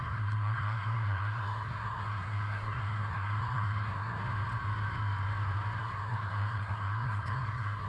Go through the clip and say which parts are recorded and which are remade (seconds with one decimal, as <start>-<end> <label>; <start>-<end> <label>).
0.0-4.2 remade; 4.2-5.8 recorded; 5.8-7.9 remade